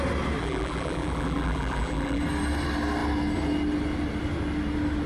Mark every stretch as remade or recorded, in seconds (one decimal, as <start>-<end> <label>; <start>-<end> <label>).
0.0-0.4 recorded; 0.4-2.2 remade; 2.2-5.1 recorded

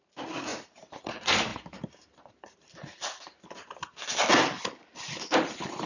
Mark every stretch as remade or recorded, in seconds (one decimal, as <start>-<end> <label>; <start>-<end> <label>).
0.0-0.5 recorded; 0.5-1.1 remade; 1.1-1.5 recorded; 1.5-3.2 remade; 3.2-5.9 recorded

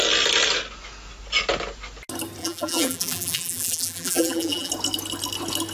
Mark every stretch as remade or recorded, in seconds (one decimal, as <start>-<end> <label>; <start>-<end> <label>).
0.0-2.4 recorded; 2.4-4.7 remade; 4.7-5.7 recorded

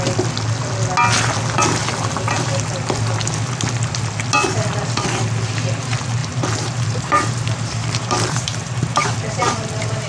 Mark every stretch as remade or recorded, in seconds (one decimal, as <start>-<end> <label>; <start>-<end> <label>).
0.0-6.2 recorded; 6.2-9.7 remade; 9.7-10.1 recorded

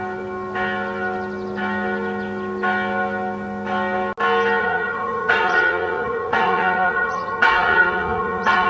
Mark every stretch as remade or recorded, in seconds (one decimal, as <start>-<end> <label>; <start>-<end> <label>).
0.0-4.6 recorded; 4.6-8.7 remade

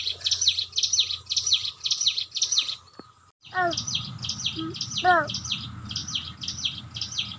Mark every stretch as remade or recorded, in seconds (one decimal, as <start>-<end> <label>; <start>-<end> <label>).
0.0-7.4 recorded

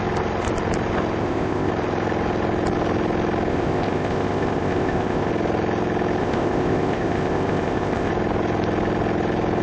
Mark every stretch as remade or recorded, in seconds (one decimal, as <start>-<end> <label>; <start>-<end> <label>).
0.0-1.2 recorded; 1.2-1.7 remade; 1.7-3.5 recorded; 3.5-5.3 remade; 5.3-6.2 recorded; 6.2-8.1 remade; 8.1-9.6 recorded